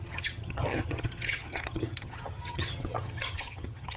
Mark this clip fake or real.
fake